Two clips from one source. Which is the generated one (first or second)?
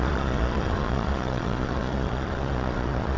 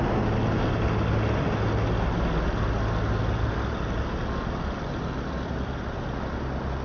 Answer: first